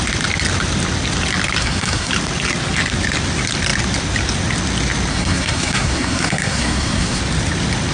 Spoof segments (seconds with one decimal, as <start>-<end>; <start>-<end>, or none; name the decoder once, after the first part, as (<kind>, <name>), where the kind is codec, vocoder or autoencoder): 1.6-2.1 (codec, SNAC); 5.1-7.2